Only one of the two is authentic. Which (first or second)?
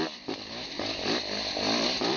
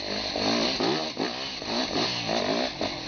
second